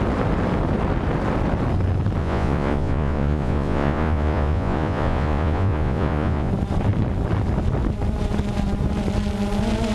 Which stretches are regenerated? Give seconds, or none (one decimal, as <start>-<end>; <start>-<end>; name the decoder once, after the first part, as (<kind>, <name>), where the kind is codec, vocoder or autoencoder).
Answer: 2.2-6.5 (vocoder, Vocos)